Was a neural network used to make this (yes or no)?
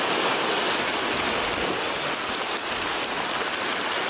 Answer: no